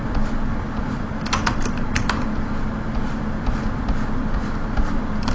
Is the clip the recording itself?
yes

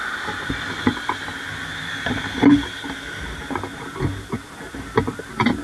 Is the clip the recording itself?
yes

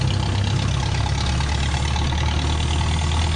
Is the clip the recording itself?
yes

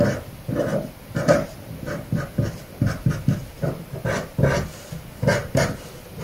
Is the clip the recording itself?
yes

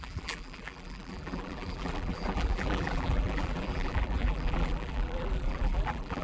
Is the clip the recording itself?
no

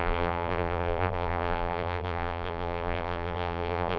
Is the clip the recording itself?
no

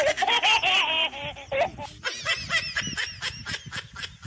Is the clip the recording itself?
yes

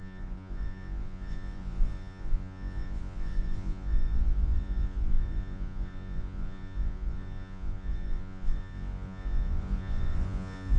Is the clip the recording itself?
no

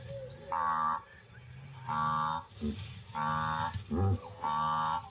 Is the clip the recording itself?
yes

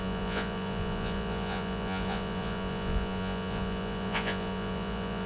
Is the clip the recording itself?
no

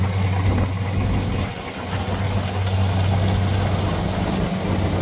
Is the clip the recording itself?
yes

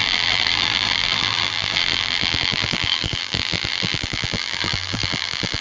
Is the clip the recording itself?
no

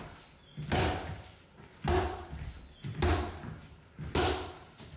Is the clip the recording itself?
yes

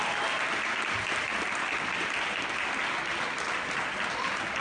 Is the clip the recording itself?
yes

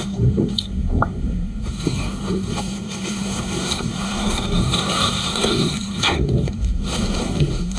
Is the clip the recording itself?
no